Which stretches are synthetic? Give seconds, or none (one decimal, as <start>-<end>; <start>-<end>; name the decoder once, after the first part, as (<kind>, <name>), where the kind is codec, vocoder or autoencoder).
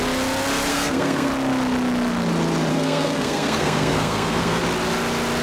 0.7-1.3 (codec, SNAC); 2.7-4.6